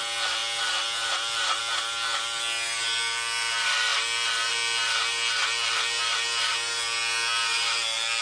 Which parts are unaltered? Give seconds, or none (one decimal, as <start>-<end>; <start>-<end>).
0.0-8.2